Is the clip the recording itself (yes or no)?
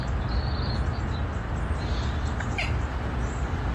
yes